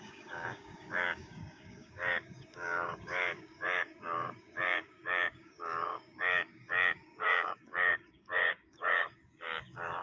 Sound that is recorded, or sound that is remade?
remade